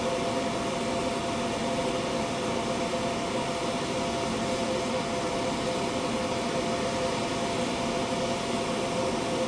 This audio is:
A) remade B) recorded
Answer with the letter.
B